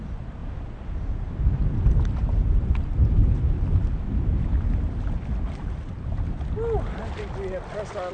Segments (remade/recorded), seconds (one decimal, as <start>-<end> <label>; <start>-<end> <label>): 0.0-0.4 remade; 0.4-1.9 recorded; 1.9-3.2 remade; 3.2-8.1 recorded